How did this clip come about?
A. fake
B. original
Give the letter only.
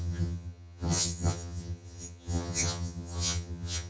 A